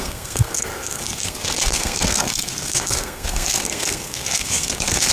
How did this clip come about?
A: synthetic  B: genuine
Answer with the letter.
A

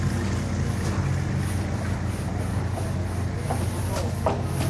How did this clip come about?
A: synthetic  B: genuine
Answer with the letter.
B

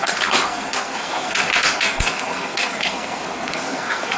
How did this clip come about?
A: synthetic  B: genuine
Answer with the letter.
A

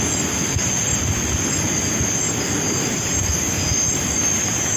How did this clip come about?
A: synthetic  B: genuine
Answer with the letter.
B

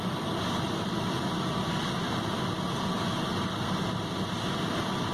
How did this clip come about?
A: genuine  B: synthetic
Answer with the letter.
A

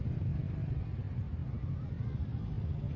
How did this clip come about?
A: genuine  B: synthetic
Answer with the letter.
A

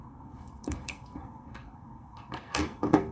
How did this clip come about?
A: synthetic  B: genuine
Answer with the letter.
A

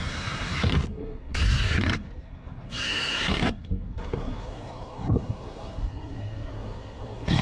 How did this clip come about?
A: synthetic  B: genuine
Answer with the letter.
A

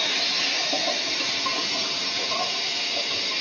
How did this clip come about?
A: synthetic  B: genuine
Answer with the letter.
B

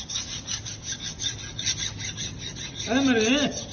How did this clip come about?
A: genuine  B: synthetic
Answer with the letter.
A